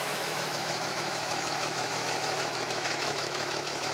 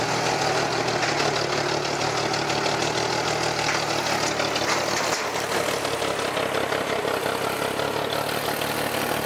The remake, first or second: first